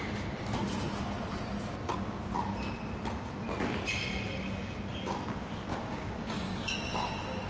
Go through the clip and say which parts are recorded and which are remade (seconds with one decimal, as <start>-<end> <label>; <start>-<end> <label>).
0.0-5.7 recorded; 5.7-6.7 remade; 6.7-7.5 recorded